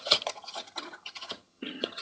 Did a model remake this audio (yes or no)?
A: yes